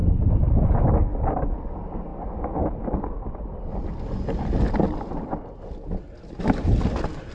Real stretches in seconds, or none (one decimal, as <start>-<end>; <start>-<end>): 0.0-7.3